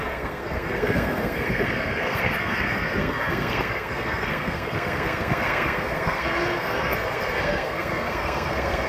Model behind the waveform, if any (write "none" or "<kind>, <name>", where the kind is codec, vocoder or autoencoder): codec, SNAC